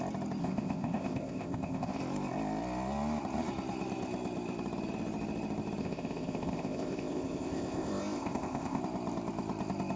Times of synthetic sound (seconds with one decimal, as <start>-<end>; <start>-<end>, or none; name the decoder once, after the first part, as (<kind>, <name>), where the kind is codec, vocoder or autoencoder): 0.4-2.0 (codec, ZipCodec); 5.8-8.8